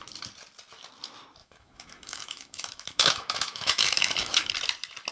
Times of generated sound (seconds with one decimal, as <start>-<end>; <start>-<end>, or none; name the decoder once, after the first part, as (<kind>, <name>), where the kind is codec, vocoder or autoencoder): 1.4-4.5 (autoencoder, DAC-VAE)